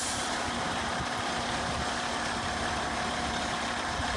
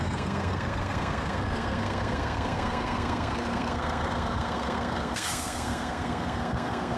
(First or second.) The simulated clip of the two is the second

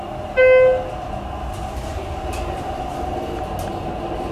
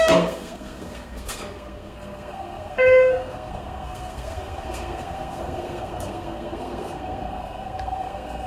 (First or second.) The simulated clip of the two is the second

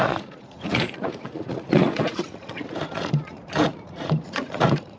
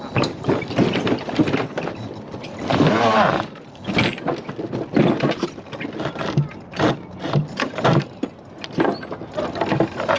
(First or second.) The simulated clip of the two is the first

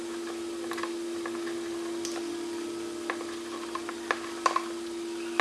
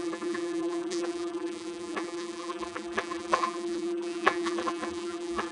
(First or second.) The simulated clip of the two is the second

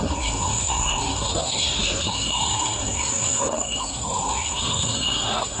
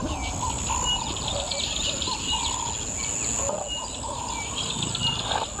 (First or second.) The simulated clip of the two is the first